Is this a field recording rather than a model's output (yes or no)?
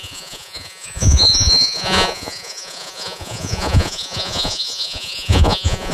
no